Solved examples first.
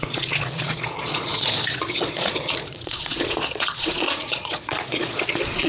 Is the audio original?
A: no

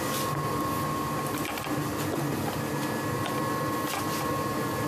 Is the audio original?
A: yes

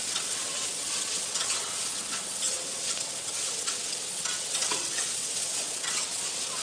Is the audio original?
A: no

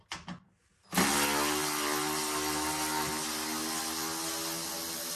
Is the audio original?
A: yes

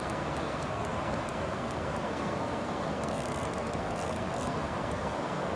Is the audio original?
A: no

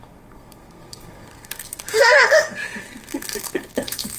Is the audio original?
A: no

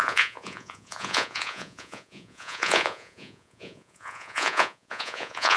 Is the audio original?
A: no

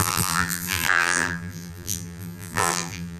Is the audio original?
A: no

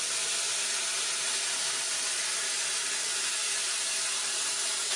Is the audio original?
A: yes